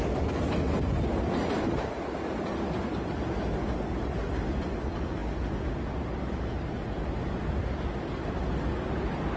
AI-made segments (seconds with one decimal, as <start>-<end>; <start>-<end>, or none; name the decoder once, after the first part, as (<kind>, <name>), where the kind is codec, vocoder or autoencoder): none